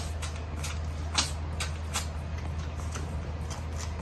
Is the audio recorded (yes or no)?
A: yes